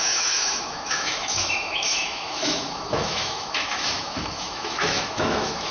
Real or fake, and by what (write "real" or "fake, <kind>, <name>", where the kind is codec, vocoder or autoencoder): fake, autoencoder, DAC-VAE